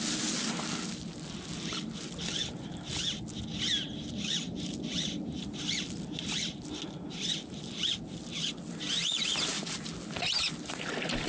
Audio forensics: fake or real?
real